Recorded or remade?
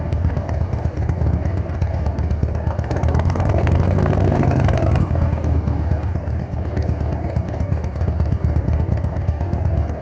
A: remade